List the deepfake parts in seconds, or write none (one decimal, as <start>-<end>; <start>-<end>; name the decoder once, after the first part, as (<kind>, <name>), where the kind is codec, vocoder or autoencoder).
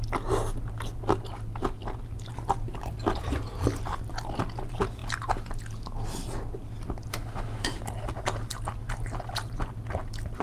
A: 7.1-7.8 (autoencoder, DAC-VAE)